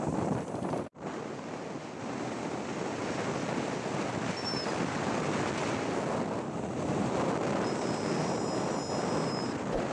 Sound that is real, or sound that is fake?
real